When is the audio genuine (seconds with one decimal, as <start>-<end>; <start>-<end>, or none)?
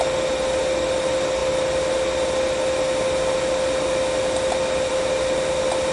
0.0-5.9